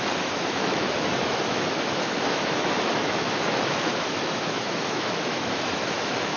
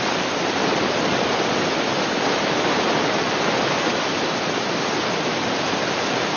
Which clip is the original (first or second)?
second